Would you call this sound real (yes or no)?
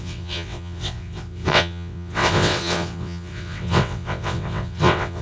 no